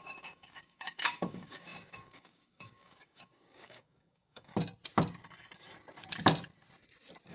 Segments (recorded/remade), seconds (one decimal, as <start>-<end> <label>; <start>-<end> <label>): 0.0-4.5 remade; 4.5-7.3 recorded